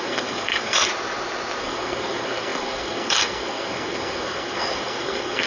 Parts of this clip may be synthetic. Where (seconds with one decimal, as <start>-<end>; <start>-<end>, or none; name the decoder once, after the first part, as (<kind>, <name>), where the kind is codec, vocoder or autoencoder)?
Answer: 0.0-0.9 (codec, SNAC); 1.6-5.5